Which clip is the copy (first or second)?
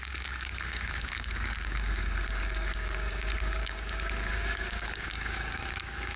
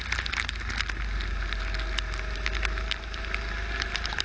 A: first